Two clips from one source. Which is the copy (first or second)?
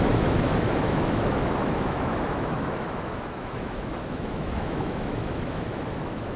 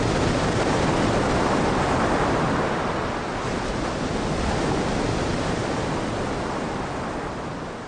first